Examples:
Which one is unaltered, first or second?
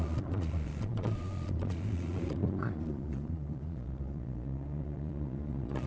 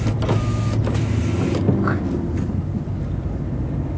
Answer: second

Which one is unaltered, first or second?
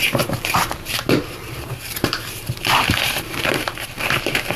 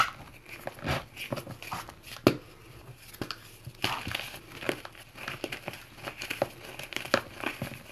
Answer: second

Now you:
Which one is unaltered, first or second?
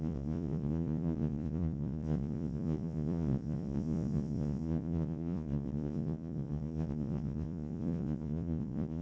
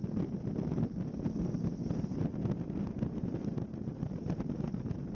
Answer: second